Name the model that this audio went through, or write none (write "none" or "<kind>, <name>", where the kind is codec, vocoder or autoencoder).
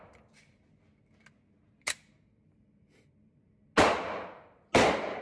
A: none